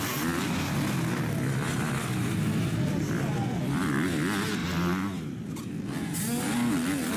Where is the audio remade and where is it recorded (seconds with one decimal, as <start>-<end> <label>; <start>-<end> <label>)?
0.0-7.2 recorded